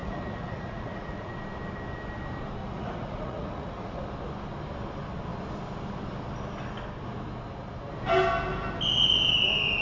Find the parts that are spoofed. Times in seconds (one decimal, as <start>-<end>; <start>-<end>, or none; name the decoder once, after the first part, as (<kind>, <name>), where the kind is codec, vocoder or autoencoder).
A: 0.0-1.3 (vocoder, Vocos); 2.6-4.0